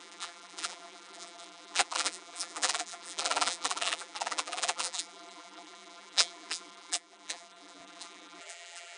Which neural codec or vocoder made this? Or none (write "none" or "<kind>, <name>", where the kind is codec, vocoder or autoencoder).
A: vocoder, BigVGAN v2